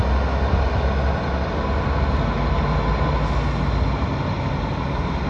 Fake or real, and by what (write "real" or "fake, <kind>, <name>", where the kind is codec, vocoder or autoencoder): real